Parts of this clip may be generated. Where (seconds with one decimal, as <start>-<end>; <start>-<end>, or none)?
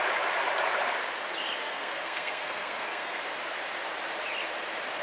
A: 1.6-3.2